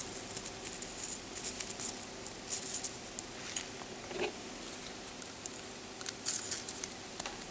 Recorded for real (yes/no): yes